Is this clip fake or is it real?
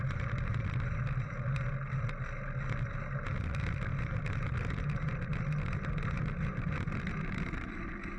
real